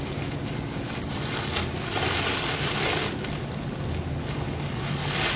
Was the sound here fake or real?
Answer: real